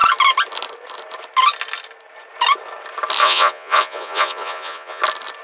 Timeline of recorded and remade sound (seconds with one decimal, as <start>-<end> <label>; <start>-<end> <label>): 0.0-3.2 recorded; 3.2-5.0 remade; 5.0-5.4 recorded